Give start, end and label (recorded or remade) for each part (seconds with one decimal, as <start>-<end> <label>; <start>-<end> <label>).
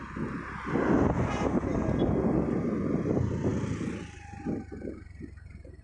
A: 0.0-5.8 recorded